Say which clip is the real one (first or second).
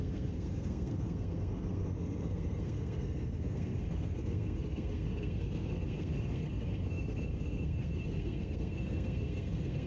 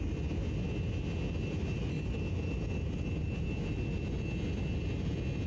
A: second